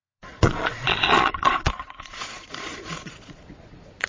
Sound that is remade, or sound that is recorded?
remade